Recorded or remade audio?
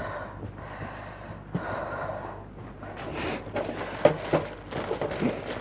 recorded